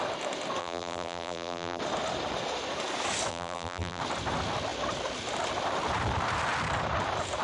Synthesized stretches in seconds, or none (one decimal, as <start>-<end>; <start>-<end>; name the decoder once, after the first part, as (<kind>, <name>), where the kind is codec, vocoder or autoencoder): 0.6-1.8 (vocoder, BigVGAN v2); 3.3-4.0